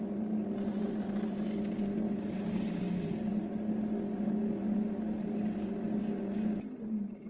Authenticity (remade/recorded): recorded